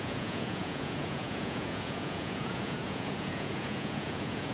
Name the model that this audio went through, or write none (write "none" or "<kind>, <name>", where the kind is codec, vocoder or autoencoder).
vocoder, Vocos